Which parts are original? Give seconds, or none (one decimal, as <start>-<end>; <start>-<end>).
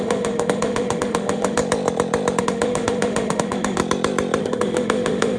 1.6-2.4; 3.8-4.4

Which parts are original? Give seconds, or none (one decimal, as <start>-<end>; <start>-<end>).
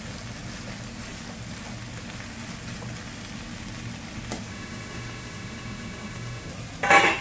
0.0-4.5; 6.5-7.2